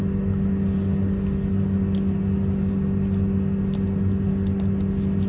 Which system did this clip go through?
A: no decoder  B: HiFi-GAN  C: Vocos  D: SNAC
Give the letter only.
A